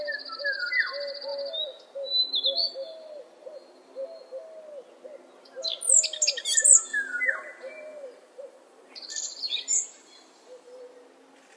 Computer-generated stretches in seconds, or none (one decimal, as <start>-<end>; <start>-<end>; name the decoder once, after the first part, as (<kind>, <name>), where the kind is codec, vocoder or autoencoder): 6.9-10.8 (vocoder, BigVGAN v2)